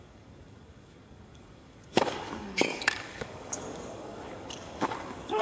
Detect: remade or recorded remade